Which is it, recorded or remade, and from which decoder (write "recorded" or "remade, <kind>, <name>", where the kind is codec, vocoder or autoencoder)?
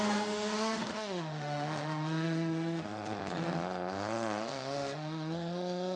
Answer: remade, autoencoder, DAC-VAE